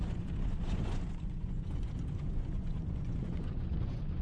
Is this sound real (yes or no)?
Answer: no